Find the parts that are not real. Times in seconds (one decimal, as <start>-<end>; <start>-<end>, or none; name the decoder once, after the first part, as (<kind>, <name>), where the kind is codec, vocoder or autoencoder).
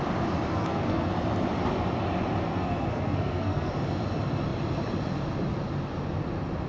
0.5-1.1 (codec, SNAC); 2.5-3.7